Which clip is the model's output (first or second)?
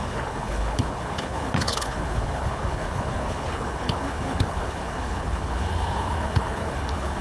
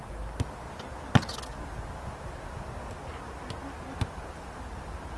first